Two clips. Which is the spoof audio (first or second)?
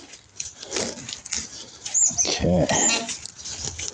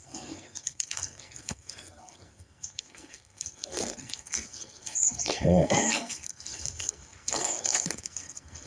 second